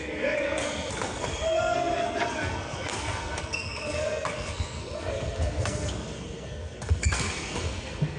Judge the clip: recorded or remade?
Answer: remade